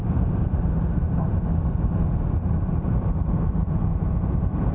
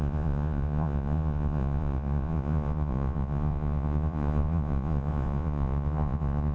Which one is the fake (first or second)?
second